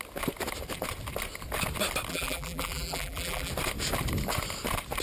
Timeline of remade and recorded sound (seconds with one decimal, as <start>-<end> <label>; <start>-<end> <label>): 0.0-2.1 recorded; 2.1-3.5 remade; 3.5-5.0 recorded